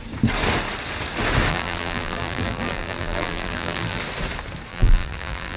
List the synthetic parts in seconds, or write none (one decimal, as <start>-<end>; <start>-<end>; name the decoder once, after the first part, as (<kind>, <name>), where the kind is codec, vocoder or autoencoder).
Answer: 1.5-4.0 (vocoder, BigVGAN v2); 4.7-5.6